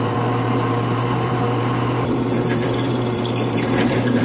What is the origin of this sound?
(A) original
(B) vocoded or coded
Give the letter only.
B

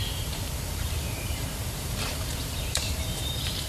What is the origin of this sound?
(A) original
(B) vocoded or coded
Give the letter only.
B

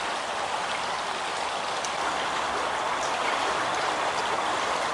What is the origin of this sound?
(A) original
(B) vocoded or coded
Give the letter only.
B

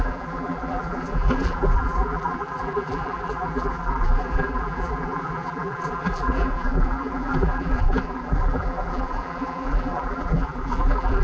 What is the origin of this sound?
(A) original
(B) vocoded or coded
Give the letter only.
B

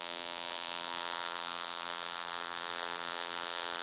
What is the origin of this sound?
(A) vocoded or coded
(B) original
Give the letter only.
A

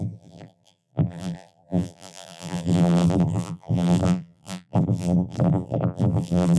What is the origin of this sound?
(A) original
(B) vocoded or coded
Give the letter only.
B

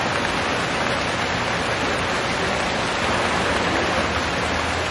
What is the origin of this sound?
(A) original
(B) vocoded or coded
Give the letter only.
A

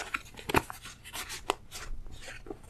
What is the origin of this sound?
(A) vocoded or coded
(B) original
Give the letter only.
B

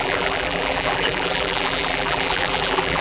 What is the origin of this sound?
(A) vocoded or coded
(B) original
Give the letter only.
A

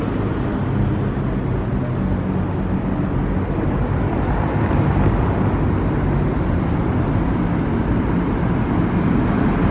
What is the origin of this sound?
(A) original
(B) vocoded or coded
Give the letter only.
A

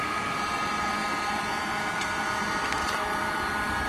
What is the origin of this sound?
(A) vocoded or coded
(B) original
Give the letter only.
A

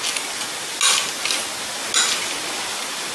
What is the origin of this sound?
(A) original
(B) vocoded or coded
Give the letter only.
A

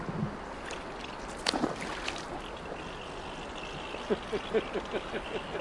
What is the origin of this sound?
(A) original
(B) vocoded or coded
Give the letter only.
A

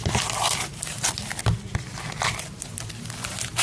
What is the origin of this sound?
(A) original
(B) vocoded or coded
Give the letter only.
A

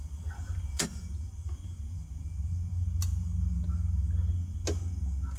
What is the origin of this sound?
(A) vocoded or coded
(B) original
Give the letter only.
B